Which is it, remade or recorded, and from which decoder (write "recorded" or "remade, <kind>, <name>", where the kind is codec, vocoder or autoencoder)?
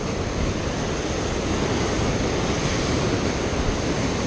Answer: recorded